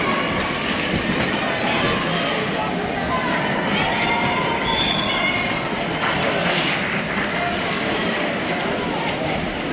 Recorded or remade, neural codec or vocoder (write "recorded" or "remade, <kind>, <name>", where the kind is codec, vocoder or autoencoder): recorded